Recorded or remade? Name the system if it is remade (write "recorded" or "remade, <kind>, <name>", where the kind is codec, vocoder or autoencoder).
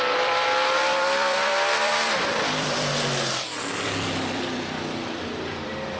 remade, vocoder, BigVGAN v2